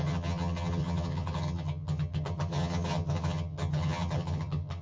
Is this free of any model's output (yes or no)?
no